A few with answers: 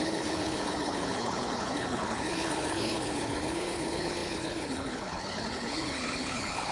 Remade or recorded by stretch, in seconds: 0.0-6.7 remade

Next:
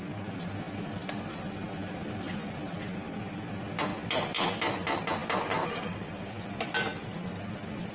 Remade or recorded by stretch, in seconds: 0.0-5.6 recorded; 5.6-6.4 remade; 6.4-7.9 recorded

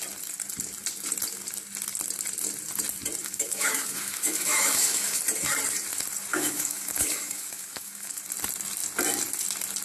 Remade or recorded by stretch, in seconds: 0.0-3.2 recorded; 3.2-5.2 remade; 5.2-6.3 recorded; 6.3-8.2 remade; 8.2-9.8 recorded

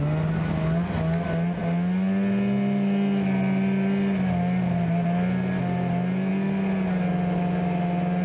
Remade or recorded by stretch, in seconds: 0.0-8.2 recorded

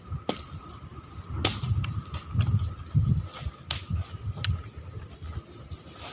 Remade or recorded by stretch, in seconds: 0.0-0.9 recorded; 0.9-2.2 remade; 2.2-6.1 recorded

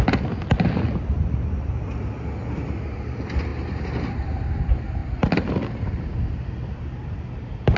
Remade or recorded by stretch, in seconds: 0.0-5.0 recorded; 5.0-6.0 remade; 6.0-7.8 recorded

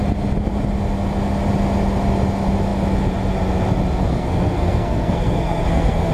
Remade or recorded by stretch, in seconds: 0.0-4.1 recorded; 4.1-6.1 remade